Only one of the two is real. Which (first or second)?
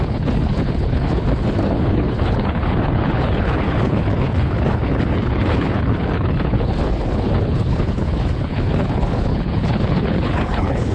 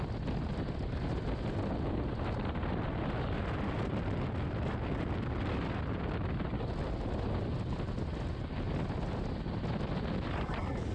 second